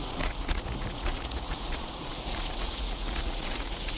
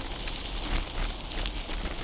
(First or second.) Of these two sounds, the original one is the second